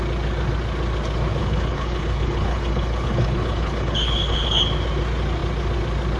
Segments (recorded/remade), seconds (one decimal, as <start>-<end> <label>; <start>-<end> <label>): 0.0-1.4 recorded; 1.4-4.6 remade; 4.6-6.2 recorded